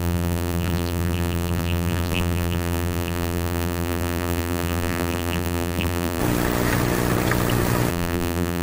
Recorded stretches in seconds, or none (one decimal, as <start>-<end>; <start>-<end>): 6.2-7.9